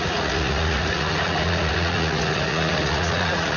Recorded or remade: remade